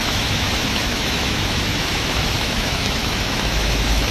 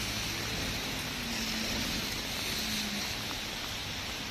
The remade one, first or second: first